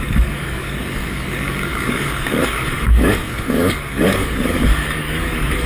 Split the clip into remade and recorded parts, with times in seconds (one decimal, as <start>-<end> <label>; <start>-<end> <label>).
0.0-5.7 remade